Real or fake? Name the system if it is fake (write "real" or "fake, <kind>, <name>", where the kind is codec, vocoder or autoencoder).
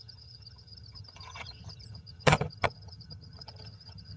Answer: fake, vocoder, HiFi-GAN